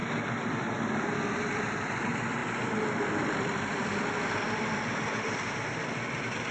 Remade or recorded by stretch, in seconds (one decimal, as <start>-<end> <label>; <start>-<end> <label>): 0.0-1.3 recorded; 1.3-6.5 remade